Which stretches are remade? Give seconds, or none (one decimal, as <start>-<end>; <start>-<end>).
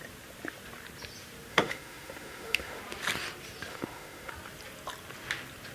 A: 1.5-2.8; 3.7-4.3